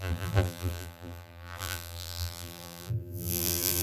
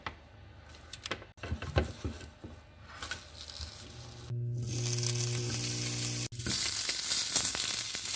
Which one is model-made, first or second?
first